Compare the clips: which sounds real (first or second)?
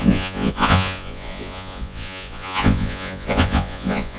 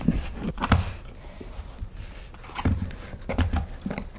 second